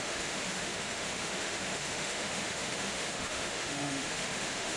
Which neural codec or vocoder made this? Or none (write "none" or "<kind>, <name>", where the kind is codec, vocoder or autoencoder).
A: autoencoder, DAC-VAE